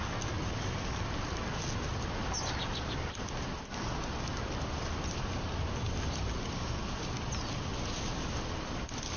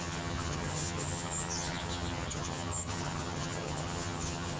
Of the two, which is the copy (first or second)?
second